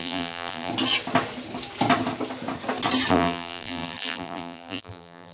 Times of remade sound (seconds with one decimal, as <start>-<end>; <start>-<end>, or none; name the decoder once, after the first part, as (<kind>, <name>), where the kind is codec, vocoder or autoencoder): 0.0-0.7 (vocoder, BigVGAN v2); 3.1-5.3